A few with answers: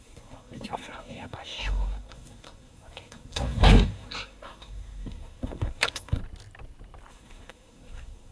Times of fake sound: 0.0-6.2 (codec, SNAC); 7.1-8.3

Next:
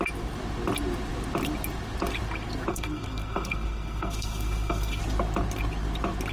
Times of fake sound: 2.7-5.0 (codec, SNAC)

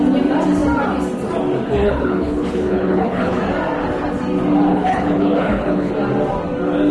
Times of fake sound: 1.8-3.4 (codec, HILCodec); 4.7-5.9